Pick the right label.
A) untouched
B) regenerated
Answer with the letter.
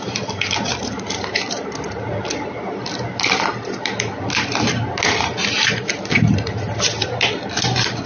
A